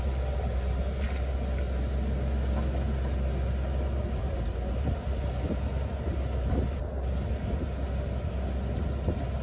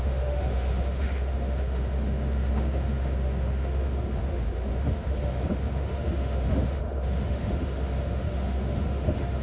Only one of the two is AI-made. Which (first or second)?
second